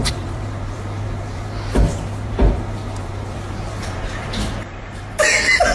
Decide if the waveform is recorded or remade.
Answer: remade